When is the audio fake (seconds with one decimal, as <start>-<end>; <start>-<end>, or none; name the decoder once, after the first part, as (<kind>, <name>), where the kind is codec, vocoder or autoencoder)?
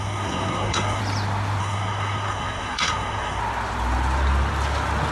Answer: 0.0-1.0 (codec, SNAC); 1.6-3.4